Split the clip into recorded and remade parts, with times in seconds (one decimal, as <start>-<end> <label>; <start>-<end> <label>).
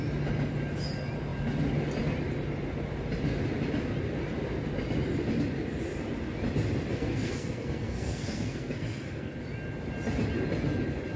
0.0-6.9 recorded; 6.9-9.3 remade; 9.3-11.2 recorded